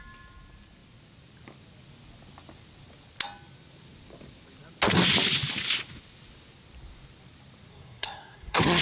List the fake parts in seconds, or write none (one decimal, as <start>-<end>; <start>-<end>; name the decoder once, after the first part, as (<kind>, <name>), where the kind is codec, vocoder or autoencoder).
7.7-8.8 (codec, SNAC)

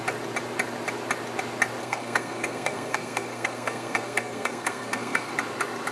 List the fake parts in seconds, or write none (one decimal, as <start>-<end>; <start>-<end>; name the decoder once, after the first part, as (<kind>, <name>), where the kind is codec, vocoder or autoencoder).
1.8-5.3 (codec, SNAC)

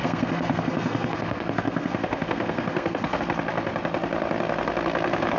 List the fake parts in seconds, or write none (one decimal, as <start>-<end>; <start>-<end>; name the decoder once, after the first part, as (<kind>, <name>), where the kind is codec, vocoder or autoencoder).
0.0-3.2 (codec, SNAC)

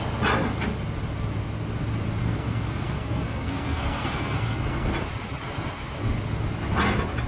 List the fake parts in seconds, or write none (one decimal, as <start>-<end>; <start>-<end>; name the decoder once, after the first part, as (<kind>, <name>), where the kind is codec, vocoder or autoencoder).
2.2-4.9 (codec, SNAC)

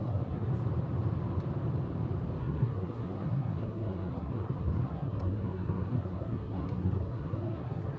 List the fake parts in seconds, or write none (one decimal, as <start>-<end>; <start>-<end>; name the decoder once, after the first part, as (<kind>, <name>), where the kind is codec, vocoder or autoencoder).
0.0-0.5 (codec, SNAC); 2.4-8.0

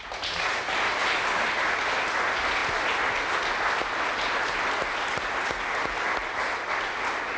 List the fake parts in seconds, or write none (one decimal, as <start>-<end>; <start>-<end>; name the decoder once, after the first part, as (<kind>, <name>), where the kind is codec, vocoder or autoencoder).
none

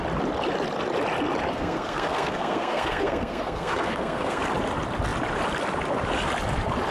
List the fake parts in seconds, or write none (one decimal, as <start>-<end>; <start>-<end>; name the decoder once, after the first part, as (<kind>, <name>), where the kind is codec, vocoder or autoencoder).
1.5-4.4 (codec, SNAC)

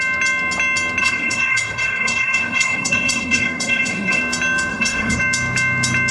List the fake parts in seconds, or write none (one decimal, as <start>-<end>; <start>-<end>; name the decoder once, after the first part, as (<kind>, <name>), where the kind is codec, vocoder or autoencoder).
1.0-4.2 (codec, SNAC); 4.7-5.2